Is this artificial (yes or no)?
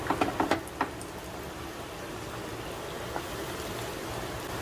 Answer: no